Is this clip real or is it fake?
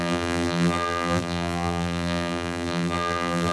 fake